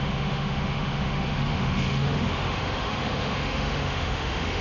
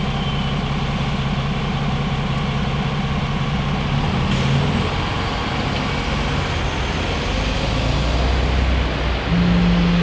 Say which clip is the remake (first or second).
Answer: first